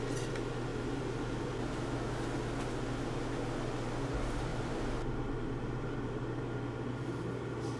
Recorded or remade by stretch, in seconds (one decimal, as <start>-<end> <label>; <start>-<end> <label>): 0.0-0.7 recorded; 0.7-1.2 remade; 1.2-4.5 recorded; 4.5-5.6 remade; 5.6-7.8 recorded